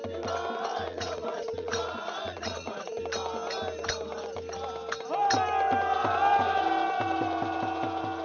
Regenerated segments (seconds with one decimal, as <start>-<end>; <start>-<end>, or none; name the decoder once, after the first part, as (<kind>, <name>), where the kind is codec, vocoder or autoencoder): 0.7-3.0 (vocoder, Vocos)